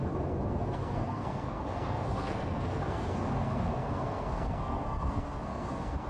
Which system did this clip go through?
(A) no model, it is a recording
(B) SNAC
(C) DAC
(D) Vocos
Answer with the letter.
B